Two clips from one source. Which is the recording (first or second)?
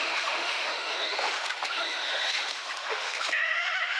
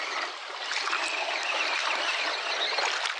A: second